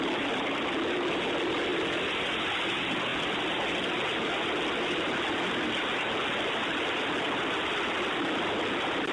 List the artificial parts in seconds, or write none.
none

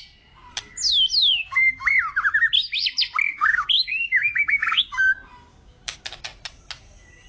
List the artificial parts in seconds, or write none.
1.2-1.9 (codec, DAC); 3.3-5.1; 5.5-6.2